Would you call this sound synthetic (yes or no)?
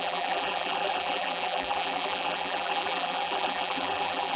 yes